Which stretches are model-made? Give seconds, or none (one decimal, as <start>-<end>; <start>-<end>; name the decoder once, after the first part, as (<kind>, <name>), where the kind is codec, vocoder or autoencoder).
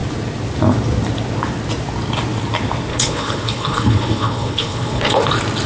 2.9-5.2 (codec, HILCodec)